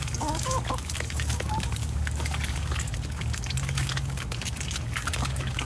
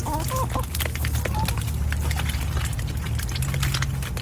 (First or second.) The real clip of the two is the second